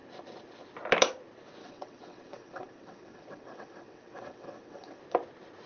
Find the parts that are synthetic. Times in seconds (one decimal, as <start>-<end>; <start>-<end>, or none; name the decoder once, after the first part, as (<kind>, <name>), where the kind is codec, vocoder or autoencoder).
1.6-5.0 (vocoder, WaveNeXt)